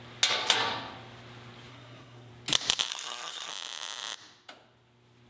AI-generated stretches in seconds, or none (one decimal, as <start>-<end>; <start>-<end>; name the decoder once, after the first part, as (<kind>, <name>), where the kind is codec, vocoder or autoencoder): 1.7-2.3 (codec, SNAC); 2.9-3.5